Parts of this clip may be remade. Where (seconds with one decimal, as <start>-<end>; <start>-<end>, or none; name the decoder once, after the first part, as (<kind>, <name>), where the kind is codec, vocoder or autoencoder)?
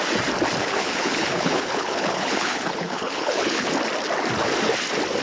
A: 0.6-3.7 (codec, HILCodec)